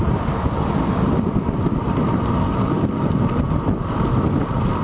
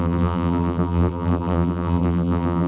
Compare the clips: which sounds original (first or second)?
first